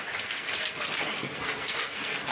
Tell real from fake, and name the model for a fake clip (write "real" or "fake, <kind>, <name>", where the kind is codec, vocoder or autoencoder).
fake, codec, SNAC